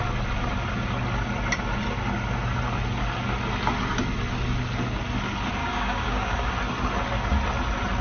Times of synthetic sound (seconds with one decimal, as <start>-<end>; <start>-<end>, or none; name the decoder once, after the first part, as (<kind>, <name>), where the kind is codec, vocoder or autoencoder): 5.6-6.5 (codec, DAC)